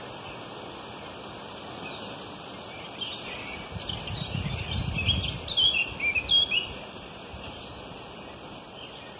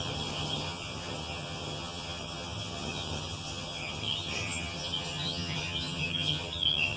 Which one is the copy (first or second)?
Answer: second